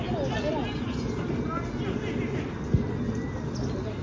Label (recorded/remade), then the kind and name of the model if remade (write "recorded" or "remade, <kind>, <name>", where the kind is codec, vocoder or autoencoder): recorded